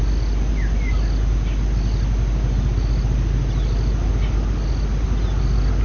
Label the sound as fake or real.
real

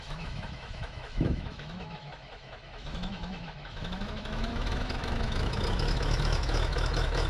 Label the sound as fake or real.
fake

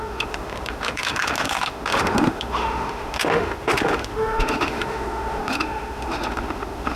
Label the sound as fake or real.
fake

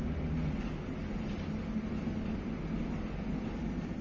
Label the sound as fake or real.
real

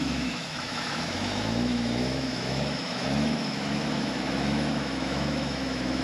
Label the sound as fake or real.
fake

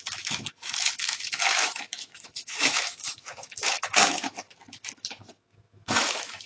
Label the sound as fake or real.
fake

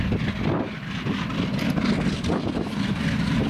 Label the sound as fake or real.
real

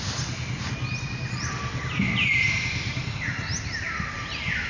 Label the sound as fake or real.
real